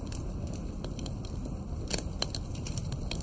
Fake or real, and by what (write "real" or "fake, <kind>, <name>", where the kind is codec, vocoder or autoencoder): real